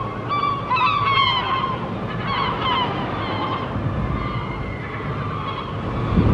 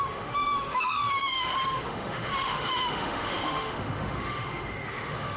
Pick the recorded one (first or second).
first